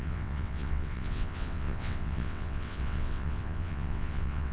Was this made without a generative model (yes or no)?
no